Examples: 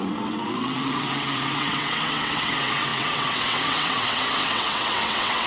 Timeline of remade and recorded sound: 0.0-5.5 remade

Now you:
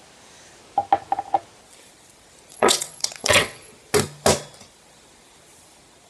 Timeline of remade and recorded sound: 0.0-2.5 recorded; 2.5-3.7 remade; 3.7-6.1 recorded

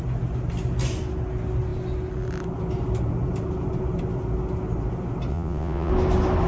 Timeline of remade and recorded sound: 0.0-5.3 recorded; 5.3-5.9 remade; 5.9-6.5 recorded